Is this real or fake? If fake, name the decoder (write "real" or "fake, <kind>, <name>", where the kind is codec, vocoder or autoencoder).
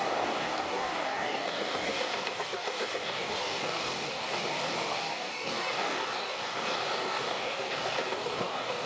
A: fake, codec, DAC